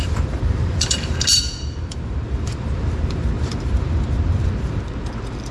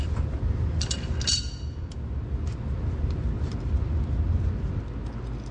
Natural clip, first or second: second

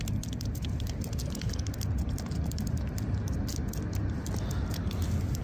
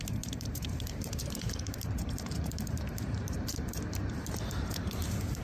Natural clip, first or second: first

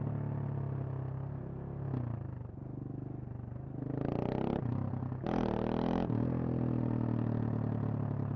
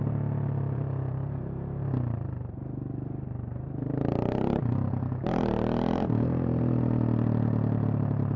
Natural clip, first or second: first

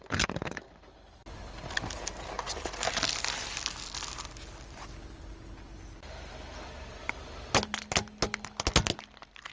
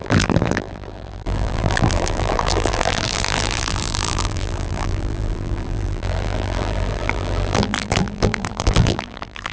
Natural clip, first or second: first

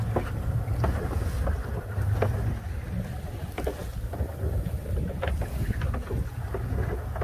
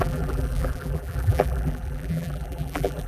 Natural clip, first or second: first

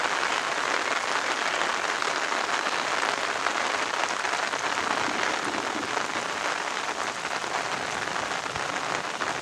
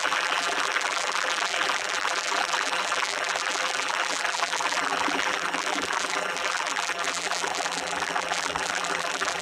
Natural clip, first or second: first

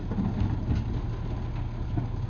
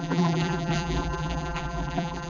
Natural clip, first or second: first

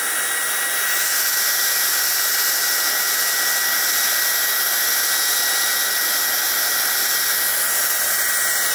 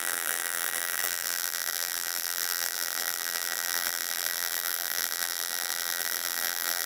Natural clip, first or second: first